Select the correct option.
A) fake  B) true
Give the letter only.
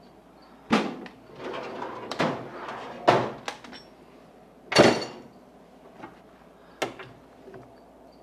B